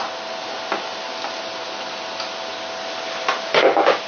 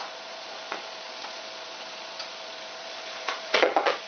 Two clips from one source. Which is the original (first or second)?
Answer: first